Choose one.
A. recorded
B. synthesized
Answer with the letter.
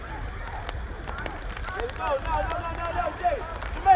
A